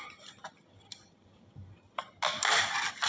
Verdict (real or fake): real